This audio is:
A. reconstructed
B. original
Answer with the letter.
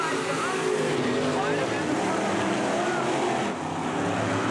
B